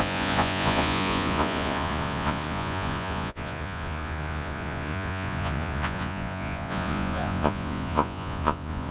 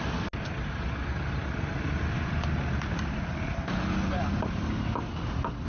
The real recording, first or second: second